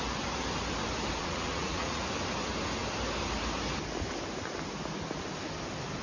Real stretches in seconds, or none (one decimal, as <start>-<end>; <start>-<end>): 0.0-1.2; 2.0-6.0